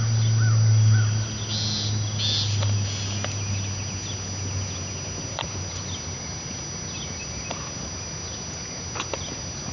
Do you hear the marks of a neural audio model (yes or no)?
no